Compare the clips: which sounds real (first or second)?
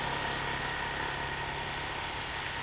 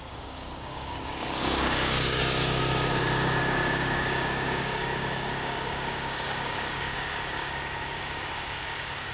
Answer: first